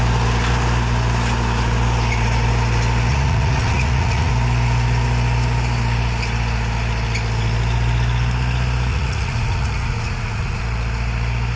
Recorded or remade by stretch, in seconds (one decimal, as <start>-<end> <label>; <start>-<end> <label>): 0.0-3.1 recorded; 3.1-4.3 remade; 4.3-8.9 recorded; 8.9-10.6 remade; 10.6-11.6 recorded